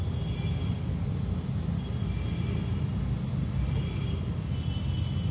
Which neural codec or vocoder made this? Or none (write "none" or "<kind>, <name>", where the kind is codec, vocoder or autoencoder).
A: none